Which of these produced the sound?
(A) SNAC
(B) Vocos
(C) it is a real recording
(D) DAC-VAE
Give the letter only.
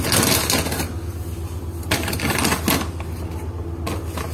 C